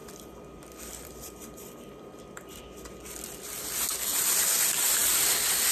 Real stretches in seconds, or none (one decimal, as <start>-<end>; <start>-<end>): 2.6-5.0